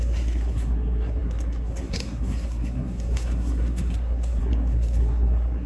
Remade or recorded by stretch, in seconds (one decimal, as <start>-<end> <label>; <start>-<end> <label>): 0.0-5.7 remade